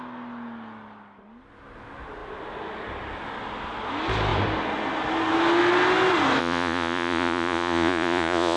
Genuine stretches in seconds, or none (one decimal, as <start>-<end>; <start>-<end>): 0.0-6.4